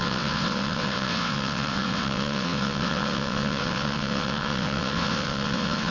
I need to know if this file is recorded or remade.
remade